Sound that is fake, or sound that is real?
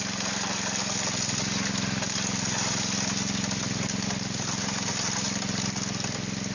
real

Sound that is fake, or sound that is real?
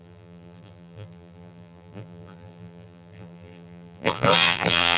fake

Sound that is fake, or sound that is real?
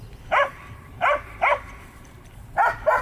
fake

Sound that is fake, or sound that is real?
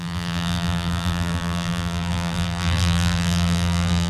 fake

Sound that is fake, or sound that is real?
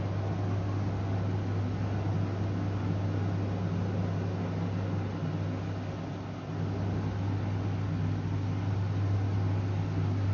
real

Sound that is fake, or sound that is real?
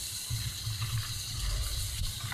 real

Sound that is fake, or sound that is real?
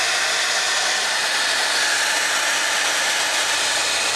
real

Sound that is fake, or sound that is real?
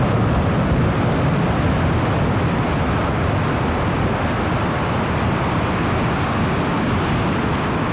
real